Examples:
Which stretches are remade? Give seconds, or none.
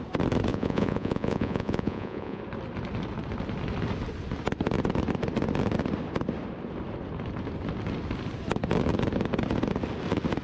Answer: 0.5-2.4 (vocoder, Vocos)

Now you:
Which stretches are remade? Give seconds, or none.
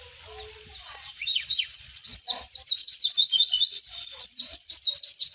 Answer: 0.8-2.4 (vocoder, Vocos); 2.8-4.7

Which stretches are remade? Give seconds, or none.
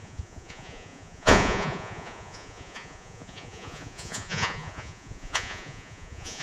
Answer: 0.0-6.4 (vocoder, Vocos)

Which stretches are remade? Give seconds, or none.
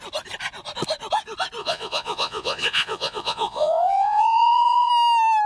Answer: 1.6-4.9 (vocoder, Vocos)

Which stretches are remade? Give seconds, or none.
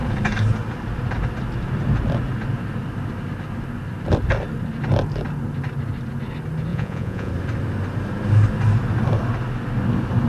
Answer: 6.7-7.3 (vocoder, Vocos)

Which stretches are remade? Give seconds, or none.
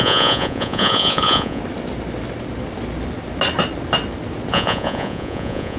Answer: 0.0-1.6 (vocoder, Vocos); 4.5-5.8